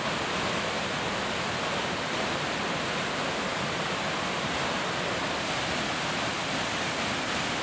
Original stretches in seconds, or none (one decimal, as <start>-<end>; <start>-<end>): 0.0-7.6